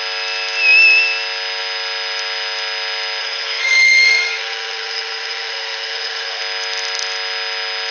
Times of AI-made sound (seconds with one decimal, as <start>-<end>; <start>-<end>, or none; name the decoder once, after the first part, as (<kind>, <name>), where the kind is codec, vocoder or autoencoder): 3.2-6.4 (codec, SNAC)